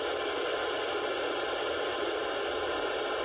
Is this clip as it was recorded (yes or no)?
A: yes